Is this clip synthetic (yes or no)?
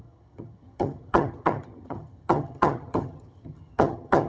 yes